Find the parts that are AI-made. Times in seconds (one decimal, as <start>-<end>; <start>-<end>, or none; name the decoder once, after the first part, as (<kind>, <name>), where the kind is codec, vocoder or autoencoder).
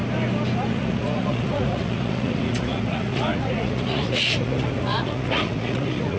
0.7-6.2 (vocoder, Vocos)